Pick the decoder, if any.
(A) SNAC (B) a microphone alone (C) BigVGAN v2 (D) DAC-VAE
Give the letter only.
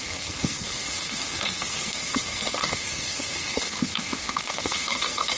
A